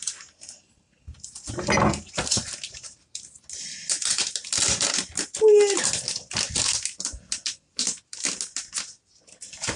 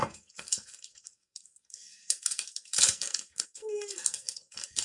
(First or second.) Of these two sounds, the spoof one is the second